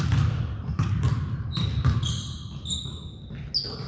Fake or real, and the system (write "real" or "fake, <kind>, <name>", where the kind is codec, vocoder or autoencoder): real